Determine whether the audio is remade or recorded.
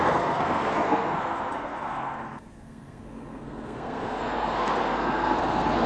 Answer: remade